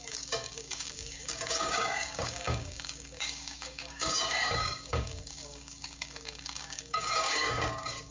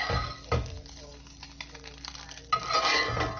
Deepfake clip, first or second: first